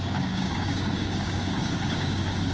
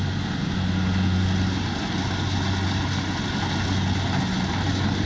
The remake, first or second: first